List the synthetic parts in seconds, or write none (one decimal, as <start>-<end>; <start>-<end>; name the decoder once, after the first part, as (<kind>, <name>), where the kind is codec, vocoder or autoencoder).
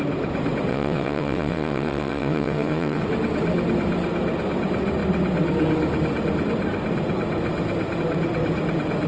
0.7-3.0 (vocoder, WaveNeXt)